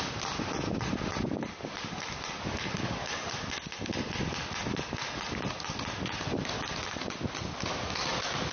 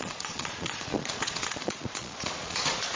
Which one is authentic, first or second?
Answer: first